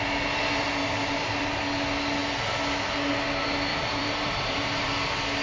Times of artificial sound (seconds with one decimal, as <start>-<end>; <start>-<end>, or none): 0.8-1.5; 3.7-4.9